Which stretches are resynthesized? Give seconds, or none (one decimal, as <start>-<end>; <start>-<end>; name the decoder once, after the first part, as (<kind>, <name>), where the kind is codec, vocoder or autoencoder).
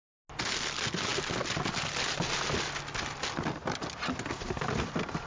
none